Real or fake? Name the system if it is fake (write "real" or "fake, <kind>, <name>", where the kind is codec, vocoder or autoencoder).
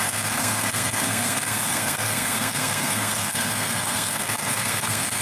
fake, codec, SNAC